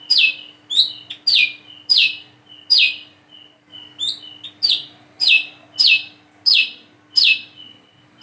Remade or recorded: recorded